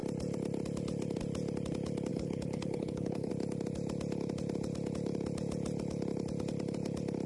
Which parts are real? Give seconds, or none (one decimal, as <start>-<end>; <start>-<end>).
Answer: 0.0-2.1; 3.3-7.3